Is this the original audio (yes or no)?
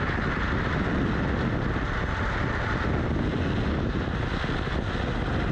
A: yes